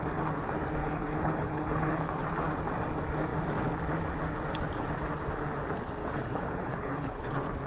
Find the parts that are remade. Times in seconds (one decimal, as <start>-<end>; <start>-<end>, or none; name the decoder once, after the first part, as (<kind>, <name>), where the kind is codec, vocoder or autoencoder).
0.8-2.0 (codec, HILCodec); 6.0-7.3